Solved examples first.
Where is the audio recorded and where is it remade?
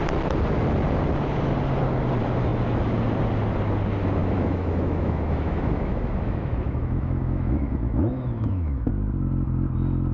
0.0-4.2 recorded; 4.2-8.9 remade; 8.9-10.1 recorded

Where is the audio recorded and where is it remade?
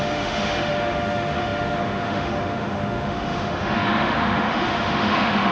0.0-5.5 remade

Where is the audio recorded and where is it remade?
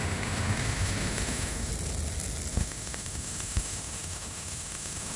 0.0-1.7 remade; 1.7-2.5 recorded; 2.5-5.2 remade